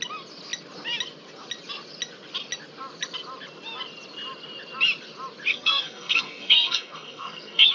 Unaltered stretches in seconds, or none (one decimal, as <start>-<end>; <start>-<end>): 0.0-5.5